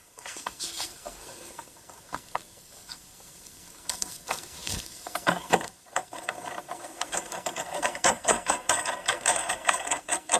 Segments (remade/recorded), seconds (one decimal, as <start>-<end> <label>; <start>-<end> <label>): 0.0-10.4 remade